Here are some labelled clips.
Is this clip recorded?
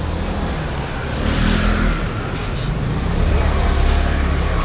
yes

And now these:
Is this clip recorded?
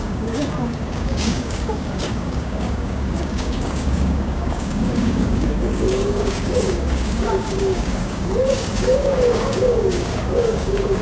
no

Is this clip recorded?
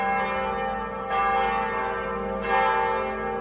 yes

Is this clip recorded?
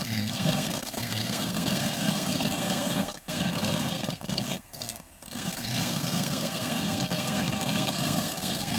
no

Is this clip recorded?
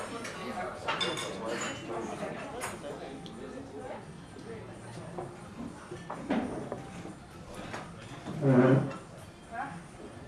yes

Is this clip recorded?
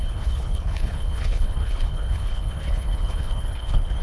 no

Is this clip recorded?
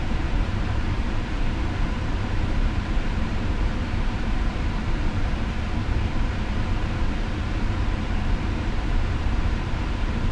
no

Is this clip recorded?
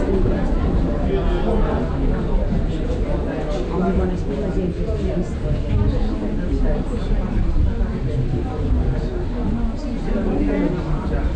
yes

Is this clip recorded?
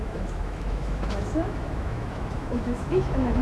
no